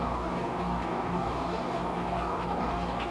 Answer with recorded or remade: remade